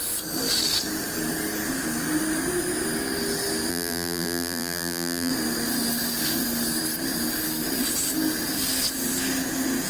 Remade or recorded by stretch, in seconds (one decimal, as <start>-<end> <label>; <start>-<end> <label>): 0.0-3.7 recorded; 3.7-5.3 remade; 5.3-9.9 recorded